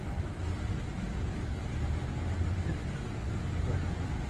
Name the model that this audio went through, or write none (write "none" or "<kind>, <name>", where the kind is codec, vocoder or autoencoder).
none